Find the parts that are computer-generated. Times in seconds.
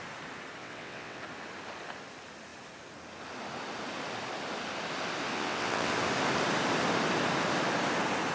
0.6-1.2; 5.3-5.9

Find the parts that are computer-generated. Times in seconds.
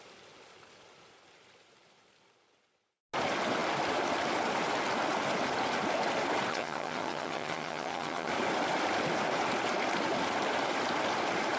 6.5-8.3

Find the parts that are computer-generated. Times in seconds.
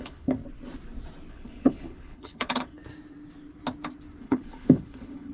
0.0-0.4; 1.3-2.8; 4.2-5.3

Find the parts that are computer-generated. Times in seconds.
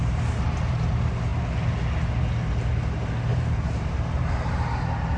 0.0-0.9; 3.3-4.7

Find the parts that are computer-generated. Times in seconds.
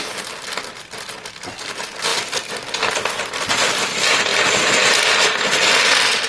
2.1-2.9; 4.3-4.9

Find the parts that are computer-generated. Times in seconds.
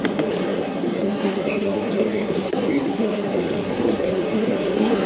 0.0-5.1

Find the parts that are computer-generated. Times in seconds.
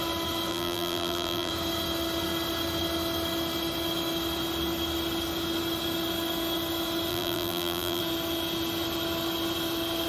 0.5-1.5; 7.1-8.0